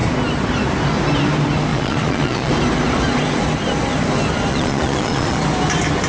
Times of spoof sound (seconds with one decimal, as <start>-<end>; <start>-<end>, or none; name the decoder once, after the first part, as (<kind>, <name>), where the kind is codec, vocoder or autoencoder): 1.7-2.5 (vocoder, Vocos); 4.5-5.4

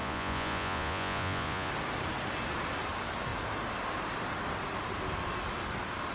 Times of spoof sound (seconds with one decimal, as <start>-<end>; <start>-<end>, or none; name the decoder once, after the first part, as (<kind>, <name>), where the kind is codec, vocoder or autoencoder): 0.0-1.7 (vocoder, Vocos)

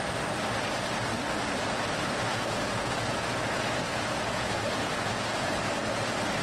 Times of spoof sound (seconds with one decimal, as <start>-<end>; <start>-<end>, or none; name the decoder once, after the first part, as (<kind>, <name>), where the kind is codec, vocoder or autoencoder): 2.3-5.6 (vocoder, Vocos)

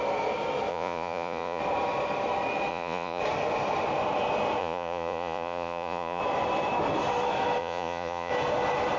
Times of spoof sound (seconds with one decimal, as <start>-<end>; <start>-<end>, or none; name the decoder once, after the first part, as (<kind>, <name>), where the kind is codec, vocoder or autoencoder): 0.7-1.6 (vocoder, Vocos); 2.7-3.2; 4.6-6.2; 7.6-8.3

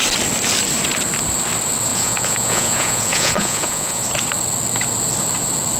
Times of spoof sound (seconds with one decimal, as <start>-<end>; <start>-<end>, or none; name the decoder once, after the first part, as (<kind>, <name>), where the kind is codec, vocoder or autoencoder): 1.9-4.0 (vocoder, Vocos)